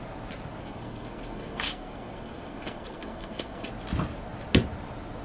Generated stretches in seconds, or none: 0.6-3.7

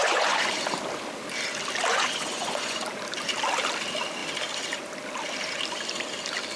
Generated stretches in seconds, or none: 0.0-0.5; 1.9-2.8

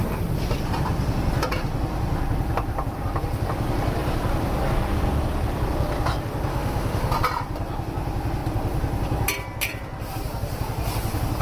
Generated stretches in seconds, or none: 6.5-7.1